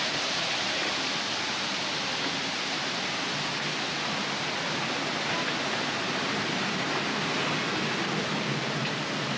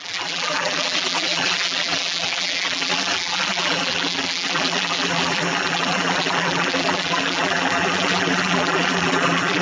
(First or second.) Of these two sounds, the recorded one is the first